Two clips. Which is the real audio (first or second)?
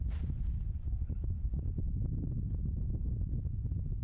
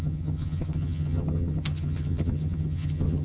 first